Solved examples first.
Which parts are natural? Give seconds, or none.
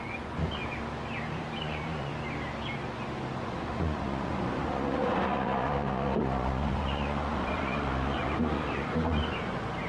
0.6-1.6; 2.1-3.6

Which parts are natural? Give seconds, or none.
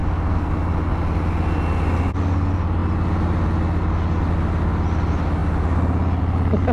0.5-6.7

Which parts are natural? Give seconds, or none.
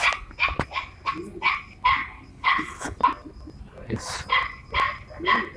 0.0-2.3; 3.0-5.6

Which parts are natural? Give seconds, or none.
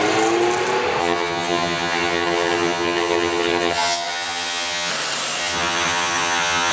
0.0-1.0; 4.9-5.4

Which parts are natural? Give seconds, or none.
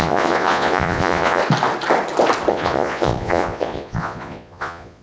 1.4-2.5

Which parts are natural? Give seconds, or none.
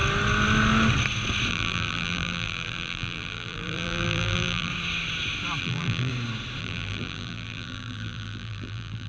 0.0-1.5; 4.7-5.6; 6.1-6.6